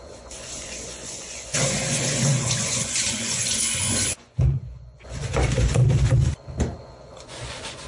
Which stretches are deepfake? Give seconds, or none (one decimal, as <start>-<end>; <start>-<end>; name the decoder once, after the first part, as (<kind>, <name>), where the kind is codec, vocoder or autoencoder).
0.0-5.8 (vocoder, Vocos); 6.8-7.9